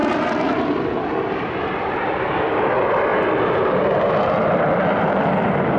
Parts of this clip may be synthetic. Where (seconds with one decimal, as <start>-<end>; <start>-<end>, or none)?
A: 0.0-3.1; 4.2-5.8